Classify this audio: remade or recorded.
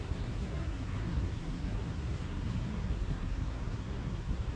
remade